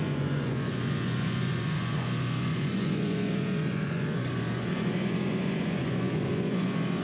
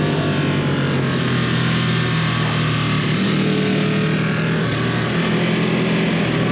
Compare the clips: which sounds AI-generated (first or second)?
first